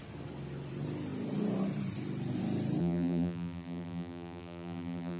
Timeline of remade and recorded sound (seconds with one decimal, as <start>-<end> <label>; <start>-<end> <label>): 0.0-2.8 recorded; 2.8-5.2 remade

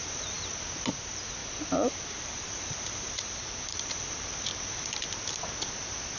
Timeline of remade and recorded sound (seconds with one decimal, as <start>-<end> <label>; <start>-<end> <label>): 0.0-0.5 remade; 0.5-1.4 recorded; 1.4-5.1 remade; 5.1-6.2 recorded

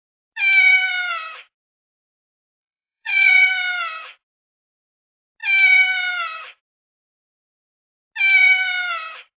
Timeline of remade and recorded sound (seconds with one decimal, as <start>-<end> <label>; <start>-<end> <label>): 0.0-2.6 recorded; 2.6-3.5 remade; 3.5-9.4 recorded